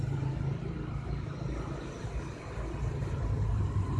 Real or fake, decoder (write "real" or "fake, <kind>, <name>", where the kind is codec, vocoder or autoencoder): real